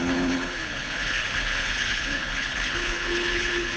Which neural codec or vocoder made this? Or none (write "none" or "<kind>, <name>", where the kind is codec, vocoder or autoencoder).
codec, HILCodec